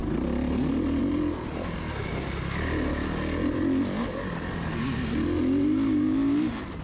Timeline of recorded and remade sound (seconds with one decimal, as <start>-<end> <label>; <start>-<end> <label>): 0.0-6.8 recorded